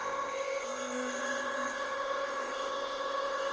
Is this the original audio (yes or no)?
no